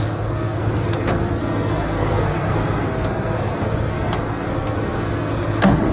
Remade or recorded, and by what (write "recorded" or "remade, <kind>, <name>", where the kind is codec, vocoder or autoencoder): remade, codec, SNAC